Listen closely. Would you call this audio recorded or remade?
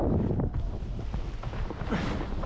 recorded